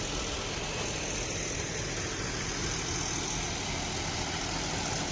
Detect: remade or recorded recorded